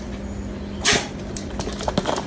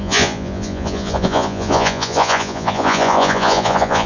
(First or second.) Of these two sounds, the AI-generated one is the second